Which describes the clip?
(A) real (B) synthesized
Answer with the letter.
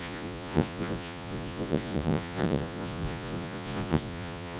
B